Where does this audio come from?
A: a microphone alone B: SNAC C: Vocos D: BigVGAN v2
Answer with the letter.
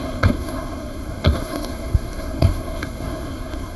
B